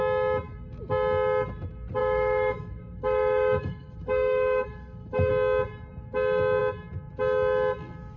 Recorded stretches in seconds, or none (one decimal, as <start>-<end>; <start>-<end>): 0.0-2.0; 5.3-8.2